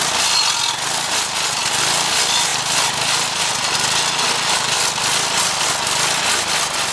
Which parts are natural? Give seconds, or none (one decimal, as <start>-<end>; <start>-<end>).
0.0-6.9